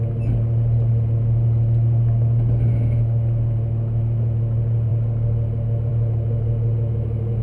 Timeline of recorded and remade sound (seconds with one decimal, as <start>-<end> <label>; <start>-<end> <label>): 0.0-7.4 recorded